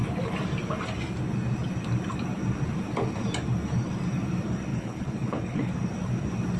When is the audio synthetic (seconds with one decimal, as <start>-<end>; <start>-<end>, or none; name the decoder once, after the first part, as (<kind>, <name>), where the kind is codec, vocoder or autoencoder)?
4.7-5.7 (codec, HILCodec)

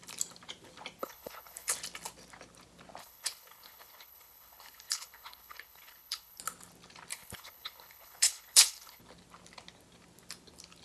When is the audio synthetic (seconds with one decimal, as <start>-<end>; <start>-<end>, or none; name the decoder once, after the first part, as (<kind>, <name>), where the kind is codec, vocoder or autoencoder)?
1.0-1.7 (codec, HILCodec); 3.0-6.4; 7.1-9.0

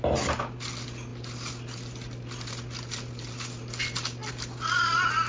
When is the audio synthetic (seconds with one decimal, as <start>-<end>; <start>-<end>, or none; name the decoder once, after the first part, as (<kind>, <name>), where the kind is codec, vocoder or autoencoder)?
none

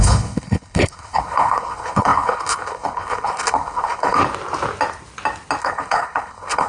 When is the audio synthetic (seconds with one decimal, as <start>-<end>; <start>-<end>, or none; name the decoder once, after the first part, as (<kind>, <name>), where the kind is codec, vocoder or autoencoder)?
0.0-4.2 (codec, HILCodec); 5.6-6.7

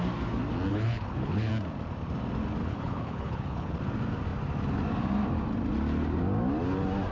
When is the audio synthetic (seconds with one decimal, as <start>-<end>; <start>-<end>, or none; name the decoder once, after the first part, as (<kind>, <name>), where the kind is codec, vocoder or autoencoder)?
0.7-1.5 (codec, HILCodec); 2.6-3.7

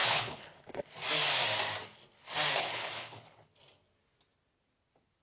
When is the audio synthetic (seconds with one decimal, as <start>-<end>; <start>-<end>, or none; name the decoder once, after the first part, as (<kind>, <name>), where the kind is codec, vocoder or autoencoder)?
0.0-0.9 (codec, HILCodec); 2.6-3.5

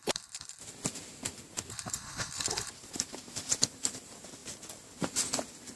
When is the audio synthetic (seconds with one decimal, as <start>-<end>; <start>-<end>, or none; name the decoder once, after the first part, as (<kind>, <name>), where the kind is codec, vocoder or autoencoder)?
0.0-0.6 (codec, HILCodec); 1.7-2.7

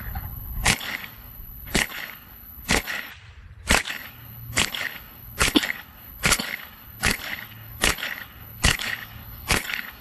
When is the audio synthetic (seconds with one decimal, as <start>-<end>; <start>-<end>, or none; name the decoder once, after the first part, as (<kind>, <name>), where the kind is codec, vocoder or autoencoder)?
0.0-3.1 (codec, HILCodec); 3.9-10.0